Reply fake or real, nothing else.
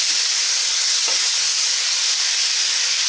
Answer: real